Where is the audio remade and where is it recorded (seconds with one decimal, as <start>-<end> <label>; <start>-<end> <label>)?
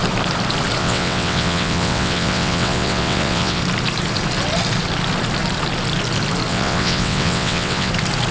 0.0-0.8 recorded; 0.8-3.6 remade; 3.6-6.5 recorded; 6.5-7.9 remade; 7.9-8.3 recorded